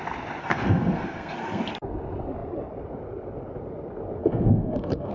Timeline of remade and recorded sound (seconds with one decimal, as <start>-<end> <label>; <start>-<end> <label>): 0.0-0.4 recorded; 0.4-1.6 remade; 1.6-4.2 recorded; 4.2-5.1 remade